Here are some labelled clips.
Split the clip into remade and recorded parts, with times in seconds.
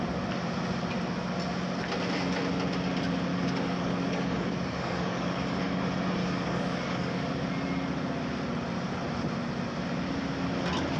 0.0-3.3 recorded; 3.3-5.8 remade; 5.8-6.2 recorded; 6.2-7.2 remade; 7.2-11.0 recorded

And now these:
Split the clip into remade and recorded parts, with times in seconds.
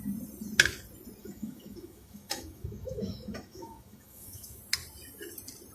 0.0-1.2 recorded; 1.2-4.6 remade; 4.6-5.7 recorded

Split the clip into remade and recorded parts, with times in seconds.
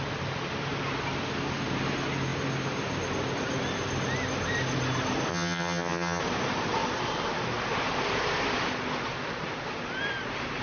0.0-5.3 recorded; 5.3-6.2 remade; 6.2-10.6 recorded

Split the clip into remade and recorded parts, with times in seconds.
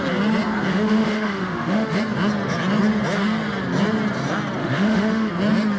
0.0-0.7 recorded; 0.7-2.0 remade; 2.0-4.6 recorded; 4.6-5.3 remade; 5.3-5.8 recorded